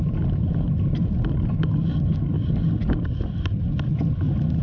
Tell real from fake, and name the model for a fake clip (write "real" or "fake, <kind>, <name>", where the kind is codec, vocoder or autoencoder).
real